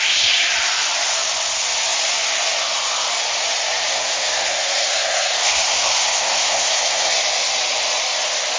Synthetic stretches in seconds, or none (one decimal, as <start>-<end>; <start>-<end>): 3.9-7.1